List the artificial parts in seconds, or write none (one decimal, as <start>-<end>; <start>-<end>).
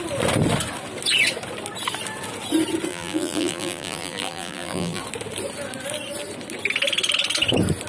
2.9-5.0